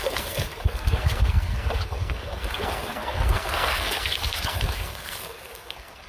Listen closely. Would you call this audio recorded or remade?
remade